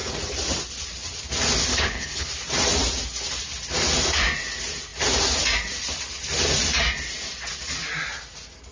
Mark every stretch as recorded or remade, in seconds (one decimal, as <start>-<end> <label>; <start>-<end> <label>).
0.0-1.7 recorded; 1.7-2.3 remade; 2.3-8.7 recorded